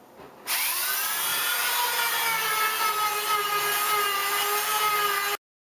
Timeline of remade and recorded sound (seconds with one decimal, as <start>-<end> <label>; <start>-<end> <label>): 0.0-1.3 recorded; 1.3-2.6 remade; 2.6-4.2 recorded; 4.2-4.9 remade; 4.9-5.7 recorded